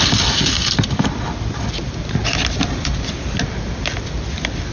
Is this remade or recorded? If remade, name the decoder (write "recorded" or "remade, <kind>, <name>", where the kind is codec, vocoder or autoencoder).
recorded